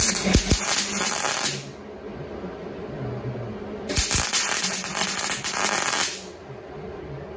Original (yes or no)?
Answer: yes